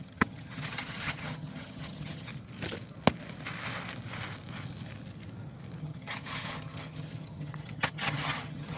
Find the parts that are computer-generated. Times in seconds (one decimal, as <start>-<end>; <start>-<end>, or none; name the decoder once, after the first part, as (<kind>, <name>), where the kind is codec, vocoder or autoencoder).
0.0-2.3 (vocoder, HiFi-GAN); 5.8-8.8